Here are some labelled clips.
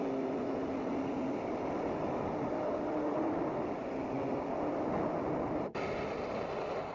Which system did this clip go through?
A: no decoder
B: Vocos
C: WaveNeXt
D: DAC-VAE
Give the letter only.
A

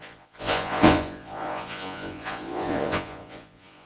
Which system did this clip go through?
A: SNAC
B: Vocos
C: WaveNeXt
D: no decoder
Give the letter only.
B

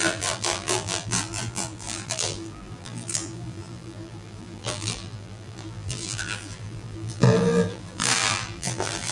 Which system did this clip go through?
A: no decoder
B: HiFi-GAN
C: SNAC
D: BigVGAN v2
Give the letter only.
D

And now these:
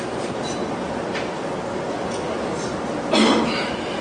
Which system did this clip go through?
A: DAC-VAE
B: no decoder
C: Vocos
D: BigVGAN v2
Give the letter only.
B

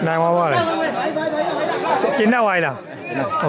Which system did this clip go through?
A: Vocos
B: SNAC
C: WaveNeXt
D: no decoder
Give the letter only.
D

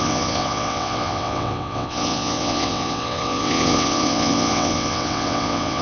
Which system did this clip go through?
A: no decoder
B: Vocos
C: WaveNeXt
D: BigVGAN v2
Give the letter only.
C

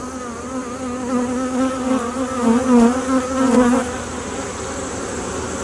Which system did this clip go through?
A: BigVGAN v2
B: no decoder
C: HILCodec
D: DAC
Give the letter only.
B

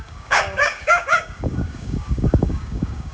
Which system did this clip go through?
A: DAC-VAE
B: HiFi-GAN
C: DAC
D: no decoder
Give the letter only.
C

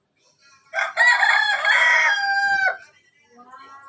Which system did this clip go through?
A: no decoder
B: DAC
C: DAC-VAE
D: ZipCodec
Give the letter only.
A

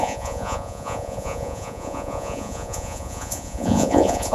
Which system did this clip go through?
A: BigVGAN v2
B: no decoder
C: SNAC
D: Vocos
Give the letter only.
D